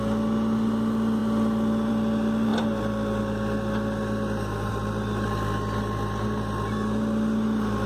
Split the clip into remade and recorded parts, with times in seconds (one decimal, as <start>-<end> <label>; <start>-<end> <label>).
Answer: 0.0-7.9 recorded